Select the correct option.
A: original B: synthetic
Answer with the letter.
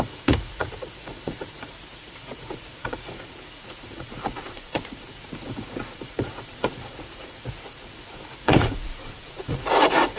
B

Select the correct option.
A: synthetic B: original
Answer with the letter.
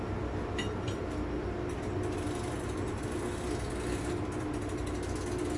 B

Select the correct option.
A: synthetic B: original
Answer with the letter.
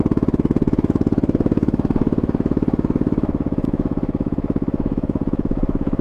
A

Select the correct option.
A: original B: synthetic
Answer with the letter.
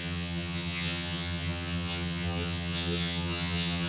B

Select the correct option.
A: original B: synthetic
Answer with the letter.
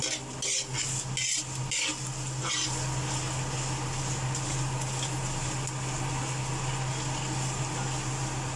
A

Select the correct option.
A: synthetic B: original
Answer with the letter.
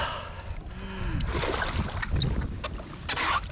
B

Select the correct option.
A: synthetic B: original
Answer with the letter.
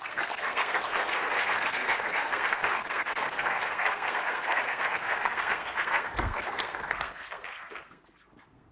A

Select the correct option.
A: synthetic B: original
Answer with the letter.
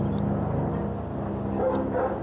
B